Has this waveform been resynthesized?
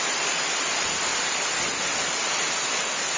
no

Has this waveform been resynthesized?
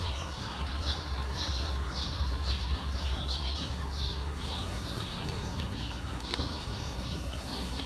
yes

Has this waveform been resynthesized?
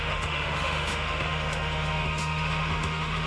yes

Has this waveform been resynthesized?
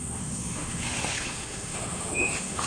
yes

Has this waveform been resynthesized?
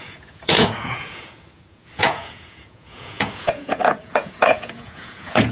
yes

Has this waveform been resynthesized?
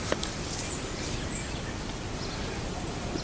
no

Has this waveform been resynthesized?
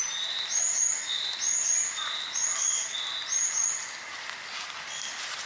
no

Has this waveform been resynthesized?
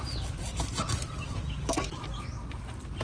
no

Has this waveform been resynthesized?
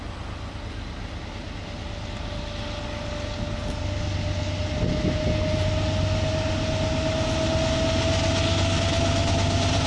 no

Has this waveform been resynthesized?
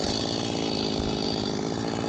no